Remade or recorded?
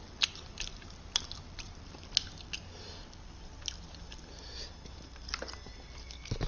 recorded